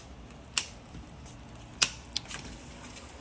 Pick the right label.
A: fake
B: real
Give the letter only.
B